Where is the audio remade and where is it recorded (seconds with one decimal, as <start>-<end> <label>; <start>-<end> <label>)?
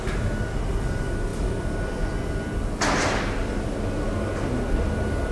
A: 0.0-5.3 recorded